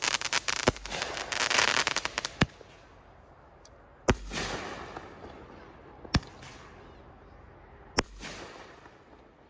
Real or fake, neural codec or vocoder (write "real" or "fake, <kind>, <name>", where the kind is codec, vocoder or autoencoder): real